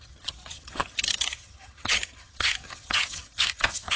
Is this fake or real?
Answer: fake